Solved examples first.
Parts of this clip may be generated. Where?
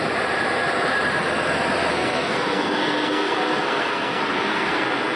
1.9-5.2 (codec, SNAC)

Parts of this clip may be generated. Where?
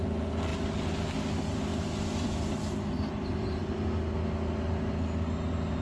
none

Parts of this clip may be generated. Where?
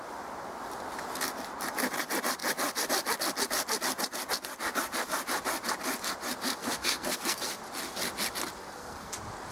6.6-7.6 (codec, SNAC); 8.6-9.1